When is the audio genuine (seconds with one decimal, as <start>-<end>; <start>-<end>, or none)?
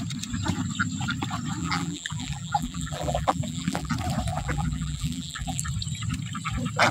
0.0-1.6; 3.9-4.3; 5.6-6.9